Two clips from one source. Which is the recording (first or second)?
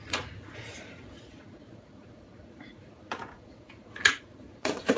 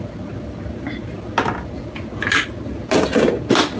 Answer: second